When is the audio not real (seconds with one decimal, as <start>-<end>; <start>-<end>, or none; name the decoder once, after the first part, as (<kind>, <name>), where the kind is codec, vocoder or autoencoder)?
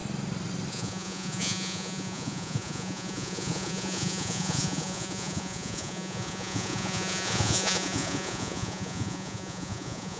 0.7-10.2 (vocoder, Vocos)